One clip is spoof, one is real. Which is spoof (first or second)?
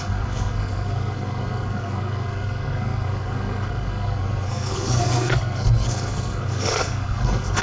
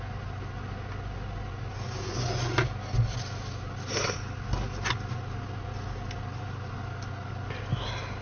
first